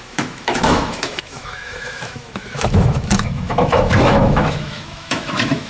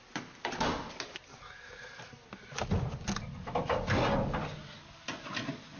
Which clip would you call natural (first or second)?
second